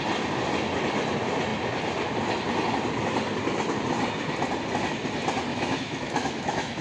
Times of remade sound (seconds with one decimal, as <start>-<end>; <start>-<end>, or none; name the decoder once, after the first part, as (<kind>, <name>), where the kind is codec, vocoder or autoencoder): 5.5-6.8 (autoencoder, DAC-VAE)